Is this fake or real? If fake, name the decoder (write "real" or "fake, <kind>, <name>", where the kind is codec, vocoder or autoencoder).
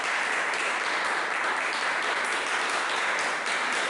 real